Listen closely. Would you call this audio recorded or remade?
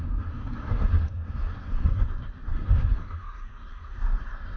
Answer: remade